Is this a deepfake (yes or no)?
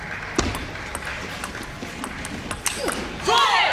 no